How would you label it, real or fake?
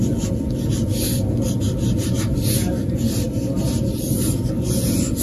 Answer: real